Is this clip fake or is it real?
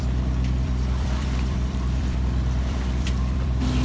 fake